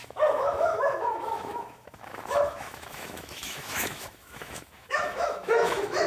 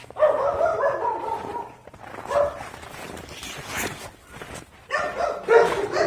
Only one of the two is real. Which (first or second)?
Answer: second